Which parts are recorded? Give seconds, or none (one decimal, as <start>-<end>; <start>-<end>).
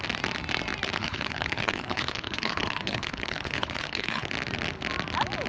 0.0-1.0; 4.3-5.5